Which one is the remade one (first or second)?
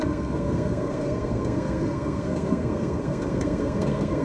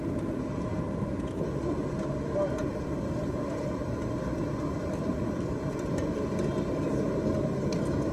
first